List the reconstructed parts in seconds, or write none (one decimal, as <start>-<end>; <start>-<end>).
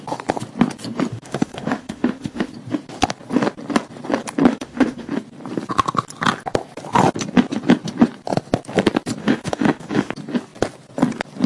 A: 1.1-2.5; 4.5-5.1; 9.2-10.1